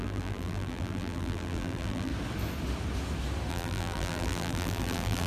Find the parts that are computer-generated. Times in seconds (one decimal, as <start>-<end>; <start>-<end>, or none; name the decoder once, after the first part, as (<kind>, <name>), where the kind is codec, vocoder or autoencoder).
0.0-2.1 (vocoder, BigVGAN v2); 3.5-5.3